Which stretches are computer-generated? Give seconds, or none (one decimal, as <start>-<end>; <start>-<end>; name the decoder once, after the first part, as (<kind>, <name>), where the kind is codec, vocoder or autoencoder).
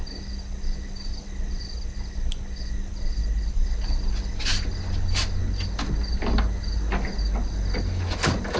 none